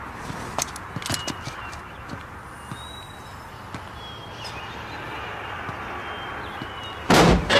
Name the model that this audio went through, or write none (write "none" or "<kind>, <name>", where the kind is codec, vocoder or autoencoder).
none